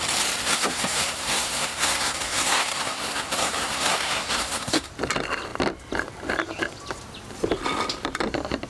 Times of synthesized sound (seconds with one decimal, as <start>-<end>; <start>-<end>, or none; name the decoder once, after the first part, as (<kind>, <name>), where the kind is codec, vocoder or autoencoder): 0.4-4.9 (codec, SNAC)

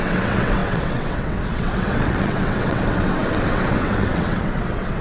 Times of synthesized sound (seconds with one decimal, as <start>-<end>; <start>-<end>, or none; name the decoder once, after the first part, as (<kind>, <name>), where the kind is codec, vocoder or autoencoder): 0.0-5.0 (vocoder, WaveNeXt)

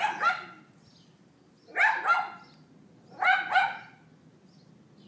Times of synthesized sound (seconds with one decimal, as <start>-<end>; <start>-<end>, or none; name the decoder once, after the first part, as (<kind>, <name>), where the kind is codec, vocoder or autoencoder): none

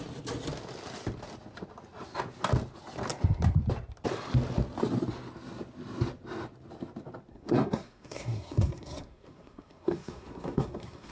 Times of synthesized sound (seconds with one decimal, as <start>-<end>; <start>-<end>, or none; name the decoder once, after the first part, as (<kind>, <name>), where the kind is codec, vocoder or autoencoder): 7.3-11.1 (codec, SNAC)

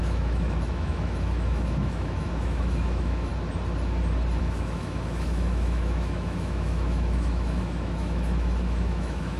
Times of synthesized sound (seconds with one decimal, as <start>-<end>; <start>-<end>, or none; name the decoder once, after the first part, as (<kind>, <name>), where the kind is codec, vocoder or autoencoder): 0.0-3.3 (autoencoder, DAC-VAE); 4.4-9.4

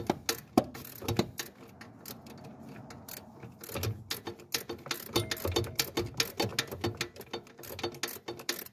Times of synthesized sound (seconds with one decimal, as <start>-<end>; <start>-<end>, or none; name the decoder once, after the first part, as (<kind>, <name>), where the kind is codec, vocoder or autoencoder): none